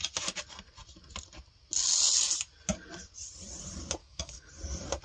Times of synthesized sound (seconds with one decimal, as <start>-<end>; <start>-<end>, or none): 4.0-4.5